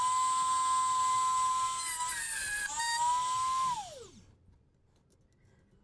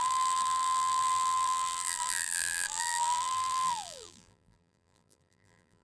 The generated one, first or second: second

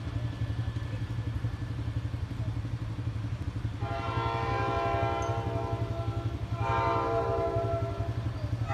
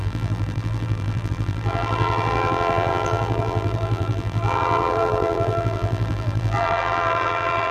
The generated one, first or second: second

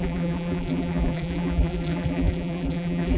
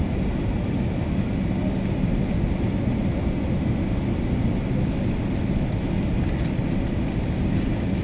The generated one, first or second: first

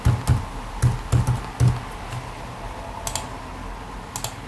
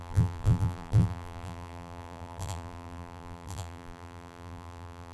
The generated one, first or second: second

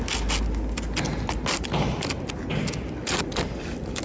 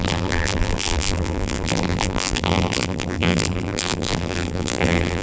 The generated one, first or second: second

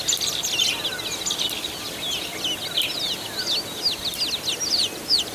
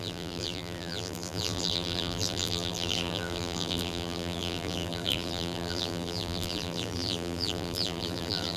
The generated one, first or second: second